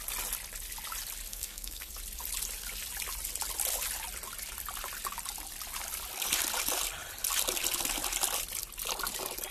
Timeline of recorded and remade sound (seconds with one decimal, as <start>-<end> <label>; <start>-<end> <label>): 0.0-1.3 recorded; 1.3-1.9 remade; 1.9-9.5 recorded